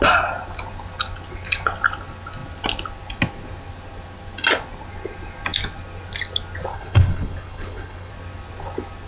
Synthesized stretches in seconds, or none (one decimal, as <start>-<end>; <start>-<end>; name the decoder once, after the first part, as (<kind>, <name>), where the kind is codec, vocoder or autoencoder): 6.7-8.1 (codec, HILCodec)